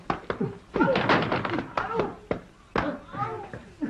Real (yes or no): yes